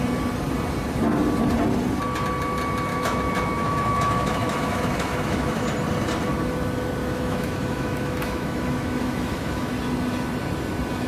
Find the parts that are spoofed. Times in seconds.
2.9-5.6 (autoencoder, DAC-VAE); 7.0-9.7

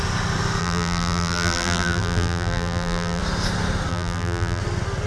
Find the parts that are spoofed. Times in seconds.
0.6-3.2 (vocoder, BigVGAN v2); 3.9-4.6

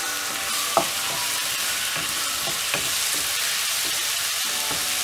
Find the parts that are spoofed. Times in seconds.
1.2-4.2 (vocoder, BigVGAN v2)